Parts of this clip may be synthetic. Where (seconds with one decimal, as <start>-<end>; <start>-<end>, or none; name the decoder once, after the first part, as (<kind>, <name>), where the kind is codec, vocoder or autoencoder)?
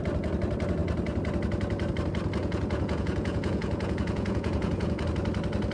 2.4-5.0 (vocoder, Vocos)